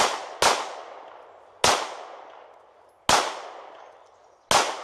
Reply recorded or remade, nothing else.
recorded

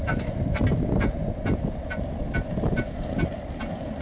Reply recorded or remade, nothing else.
remade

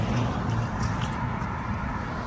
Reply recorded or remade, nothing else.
recorded